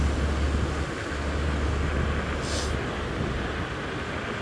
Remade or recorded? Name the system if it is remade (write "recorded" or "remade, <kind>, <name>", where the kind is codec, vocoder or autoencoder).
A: recorded